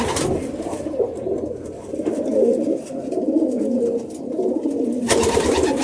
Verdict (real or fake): real